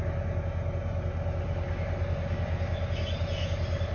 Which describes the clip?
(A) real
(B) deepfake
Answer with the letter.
A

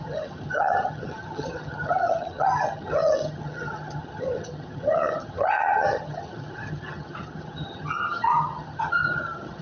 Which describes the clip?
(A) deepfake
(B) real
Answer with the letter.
A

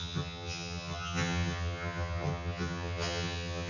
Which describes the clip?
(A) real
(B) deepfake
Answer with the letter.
B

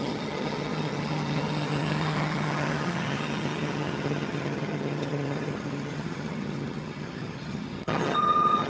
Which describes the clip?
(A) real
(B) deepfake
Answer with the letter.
B